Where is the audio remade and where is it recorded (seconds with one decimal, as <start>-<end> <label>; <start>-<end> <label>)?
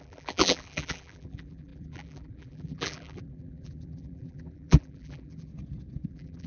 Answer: 0.0-5.5 remade; 5.5-6.1 recorded; 6.1-6.5 remade